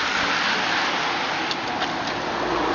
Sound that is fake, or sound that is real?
real